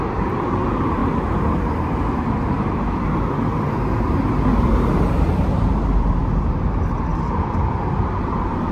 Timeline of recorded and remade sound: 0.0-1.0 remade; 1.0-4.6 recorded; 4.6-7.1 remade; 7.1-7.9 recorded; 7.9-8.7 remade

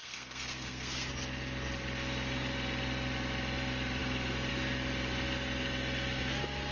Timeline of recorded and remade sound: 0.0-1.1 remade; 1.1-6.7 recorded

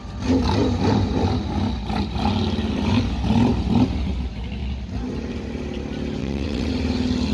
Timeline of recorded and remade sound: 0.0-6.2 recorded; 6.2-6.7 remade; 6.7-7.3 recorded

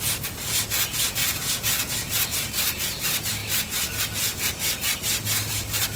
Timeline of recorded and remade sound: 0.0-1.2 recorded; 1.2-2.2 remade; 2.2-6.0 recorded